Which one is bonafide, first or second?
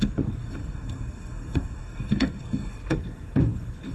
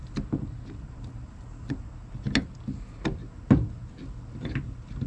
second